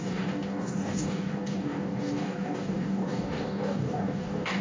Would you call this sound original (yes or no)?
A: no